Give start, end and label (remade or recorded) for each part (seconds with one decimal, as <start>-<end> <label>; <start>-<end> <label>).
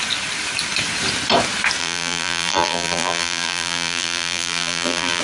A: 0.0-1.8 recorded; 1.8-5.2 remade